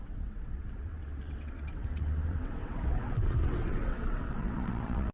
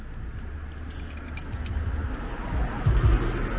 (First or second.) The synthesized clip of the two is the first